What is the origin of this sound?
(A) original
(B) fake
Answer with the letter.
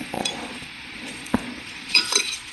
B